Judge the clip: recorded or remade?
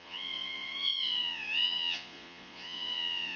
remade